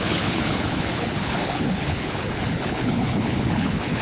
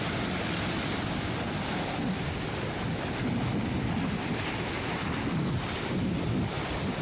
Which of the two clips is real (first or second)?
second